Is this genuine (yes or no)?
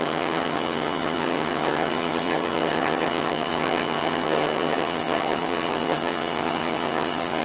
no